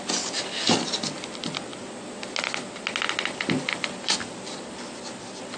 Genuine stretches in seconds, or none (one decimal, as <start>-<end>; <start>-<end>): 0.0-5.6